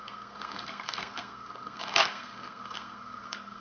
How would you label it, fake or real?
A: fake